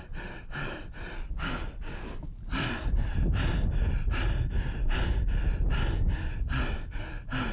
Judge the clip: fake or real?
real